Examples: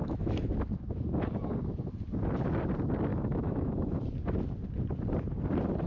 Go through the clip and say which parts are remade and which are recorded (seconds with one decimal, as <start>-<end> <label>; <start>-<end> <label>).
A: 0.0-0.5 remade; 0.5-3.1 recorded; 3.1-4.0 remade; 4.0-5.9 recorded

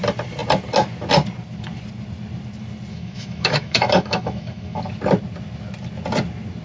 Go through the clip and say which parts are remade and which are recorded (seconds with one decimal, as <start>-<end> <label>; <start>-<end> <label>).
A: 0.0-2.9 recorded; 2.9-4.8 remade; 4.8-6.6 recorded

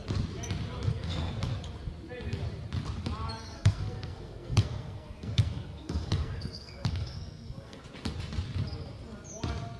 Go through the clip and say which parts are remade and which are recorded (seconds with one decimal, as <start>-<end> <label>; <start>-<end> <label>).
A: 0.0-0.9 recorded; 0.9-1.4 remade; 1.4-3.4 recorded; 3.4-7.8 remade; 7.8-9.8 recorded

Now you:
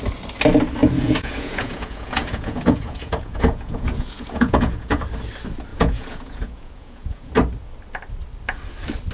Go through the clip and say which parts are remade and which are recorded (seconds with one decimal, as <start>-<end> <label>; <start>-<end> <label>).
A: 0.0-0.8 recorded; 0.8-5.0 remade; 5.0-5.7 recorded; 5.7-7.3 remade; 7.3-9.1 recorded